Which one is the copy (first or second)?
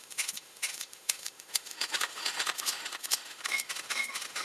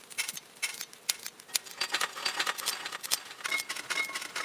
first